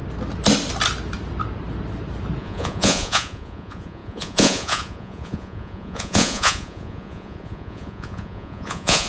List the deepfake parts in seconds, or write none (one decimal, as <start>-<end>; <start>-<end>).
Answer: 2.4-9.1